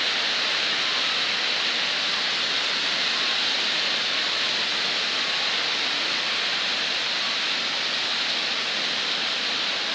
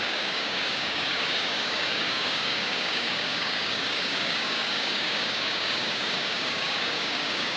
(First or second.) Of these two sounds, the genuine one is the first